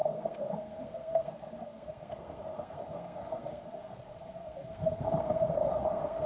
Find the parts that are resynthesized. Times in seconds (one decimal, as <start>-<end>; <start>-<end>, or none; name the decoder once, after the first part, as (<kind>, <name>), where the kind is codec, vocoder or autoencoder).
0.0-6.3 (codec, SNAC)